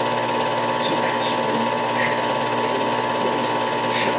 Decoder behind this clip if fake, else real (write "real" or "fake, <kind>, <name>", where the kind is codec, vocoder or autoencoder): real